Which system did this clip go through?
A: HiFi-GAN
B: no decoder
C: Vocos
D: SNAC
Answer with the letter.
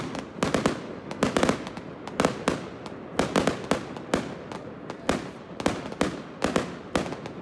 B